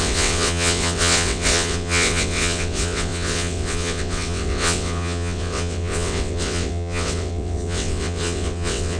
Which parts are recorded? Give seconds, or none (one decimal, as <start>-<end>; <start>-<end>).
none